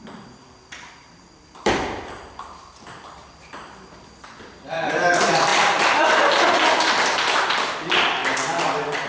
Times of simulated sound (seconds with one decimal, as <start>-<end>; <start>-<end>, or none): 0.0-8.2